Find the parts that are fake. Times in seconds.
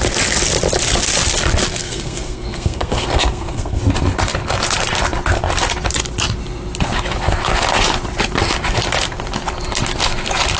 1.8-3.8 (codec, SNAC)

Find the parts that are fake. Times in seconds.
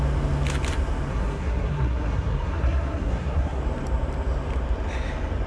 1.1-3.6 (codec, SNAC)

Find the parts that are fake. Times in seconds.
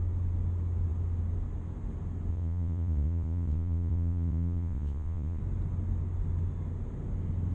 2.3-5.4 (vocoder, Vocos)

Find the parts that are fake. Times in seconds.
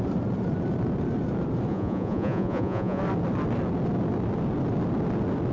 1.7-3.0 (vocoder, Vocos)